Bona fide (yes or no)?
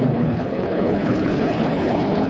no